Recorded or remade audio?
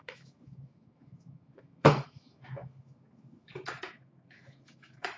remade